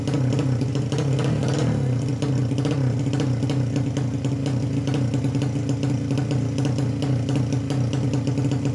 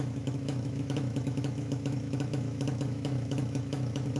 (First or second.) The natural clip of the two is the first